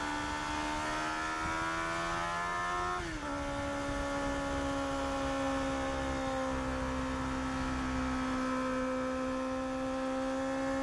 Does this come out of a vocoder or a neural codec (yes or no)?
no